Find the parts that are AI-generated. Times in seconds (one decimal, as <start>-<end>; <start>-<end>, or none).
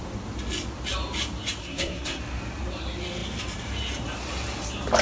1.6-2.2